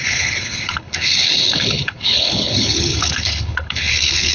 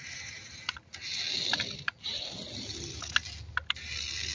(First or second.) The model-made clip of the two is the first